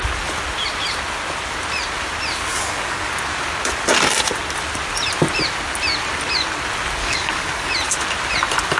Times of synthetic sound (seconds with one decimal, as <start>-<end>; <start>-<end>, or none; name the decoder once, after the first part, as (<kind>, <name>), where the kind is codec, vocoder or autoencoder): 2.5-3.1 (codec, DAC); 7.0-7.7

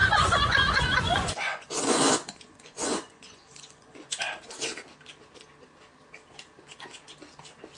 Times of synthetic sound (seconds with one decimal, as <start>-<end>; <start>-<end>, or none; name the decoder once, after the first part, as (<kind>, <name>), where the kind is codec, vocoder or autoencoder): 0.0-4.2 (vocoder, Vocos)

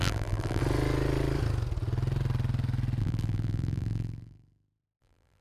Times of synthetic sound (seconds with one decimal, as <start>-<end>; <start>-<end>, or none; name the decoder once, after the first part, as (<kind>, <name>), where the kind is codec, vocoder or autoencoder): 0.0-0.6 (vocoder, BigVGAN v2); 3.0-5.4

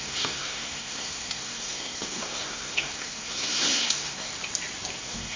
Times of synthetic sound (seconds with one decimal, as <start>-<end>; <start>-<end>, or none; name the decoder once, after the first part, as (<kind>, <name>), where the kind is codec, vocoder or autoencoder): 0.0-4.3 (codec, SNAC); 5.0-5.4

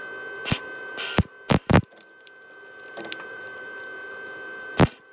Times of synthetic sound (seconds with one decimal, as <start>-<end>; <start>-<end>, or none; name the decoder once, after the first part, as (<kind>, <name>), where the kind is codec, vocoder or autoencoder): 3.1-5.1 (vocoder, BigVGAN v2)